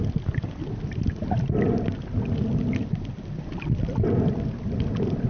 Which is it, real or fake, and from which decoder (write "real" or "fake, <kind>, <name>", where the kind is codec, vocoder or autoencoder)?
real